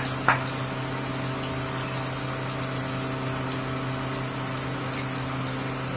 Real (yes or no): yes